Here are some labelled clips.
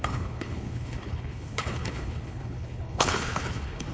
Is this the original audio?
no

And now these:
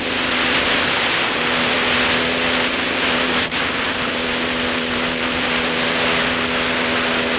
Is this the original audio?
yes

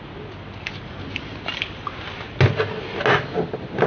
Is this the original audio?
yes